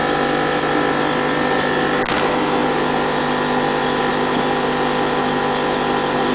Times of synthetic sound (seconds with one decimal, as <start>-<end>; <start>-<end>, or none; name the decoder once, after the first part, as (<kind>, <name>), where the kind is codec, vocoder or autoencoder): none